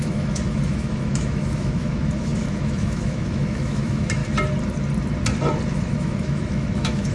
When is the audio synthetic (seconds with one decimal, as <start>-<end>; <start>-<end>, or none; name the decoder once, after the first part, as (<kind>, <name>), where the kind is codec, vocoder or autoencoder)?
0.0-4.2 (autoencoder, DAC-VAE); 5.7-7.1